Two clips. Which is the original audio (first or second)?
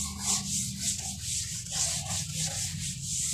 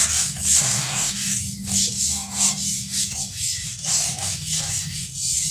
first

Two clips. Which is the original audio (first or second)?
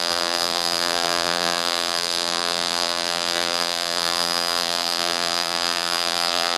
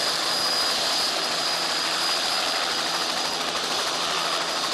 second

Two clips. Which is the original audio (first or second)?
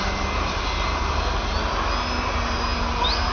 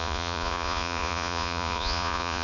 first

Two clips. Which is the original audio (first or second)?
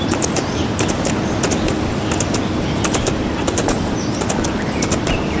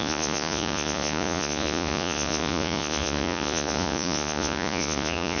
first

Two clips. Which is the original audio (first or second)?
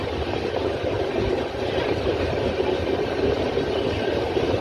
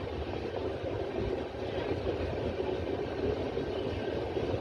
second